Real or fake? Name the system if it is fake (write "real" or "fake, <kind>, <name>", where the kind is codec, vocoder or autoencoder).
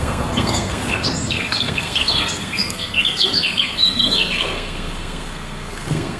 fake, codec, SNAC